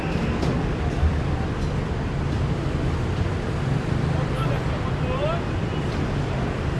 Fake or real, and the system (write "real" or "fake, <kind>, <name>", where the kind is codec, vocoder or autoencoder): real